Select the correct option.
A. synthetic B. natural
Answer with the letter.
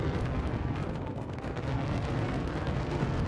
A